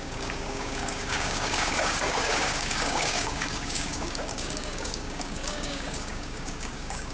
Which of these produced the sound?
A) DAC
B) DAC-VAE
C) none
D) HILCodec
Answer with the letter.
A